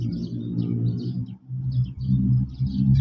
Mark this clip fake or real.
real